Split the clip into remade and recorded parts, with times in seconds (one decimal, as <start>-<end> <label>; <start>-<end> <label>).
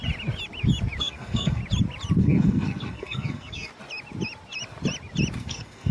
0.0-1.0 recorded; 1.0-1.6 remade; 1.6-2.2 recorded; 2.2-3.7 remade; 3.7-5.4 recorded; 5.4-5.9 remade